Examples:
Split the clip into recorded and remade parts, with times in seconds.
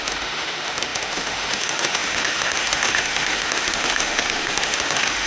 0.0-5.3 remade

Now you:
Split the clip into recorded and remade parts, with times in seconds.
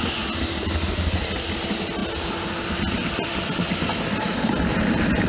0.0-5.3 recorded